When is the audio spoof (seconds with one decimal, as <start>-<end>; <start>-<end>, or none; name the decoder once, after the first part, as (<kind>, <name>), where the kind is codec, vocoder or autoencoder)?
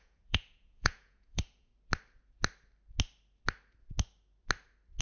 0.0-1.7 (vocoder, Vocos)